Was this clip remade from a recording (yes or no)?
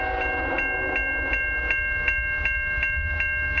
no